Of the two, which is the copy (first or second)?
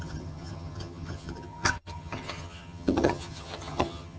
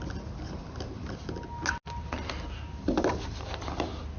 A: first